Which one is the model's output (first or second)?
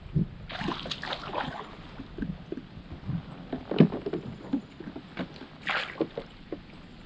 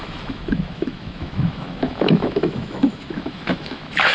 second